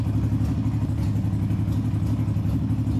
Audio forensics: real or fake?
real